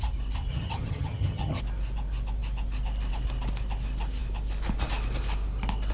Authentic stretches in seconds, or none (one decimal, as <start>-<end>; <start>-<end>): 0.0-0.5; 1.6-5.9